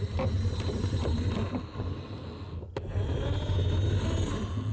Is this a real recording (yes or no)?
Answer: yes